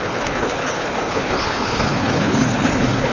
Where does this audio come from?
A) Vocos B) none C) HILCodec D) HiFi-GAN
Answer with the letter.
C